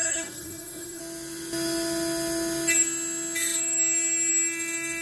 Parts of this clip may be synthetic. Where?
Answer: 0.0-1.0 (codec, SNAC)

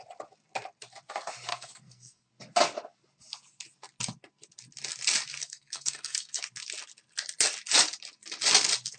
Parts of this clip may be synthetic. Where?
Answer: 1.5-2.3 (codec, SNAC); 5.4-6.4

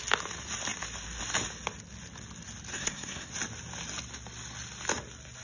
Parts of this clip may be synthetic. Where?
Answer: 2.7-3.3 (codec, SNAC)

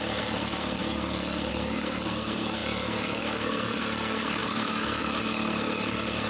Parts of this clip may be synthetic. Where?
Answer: 0.0-6.3 (codec, SNAC)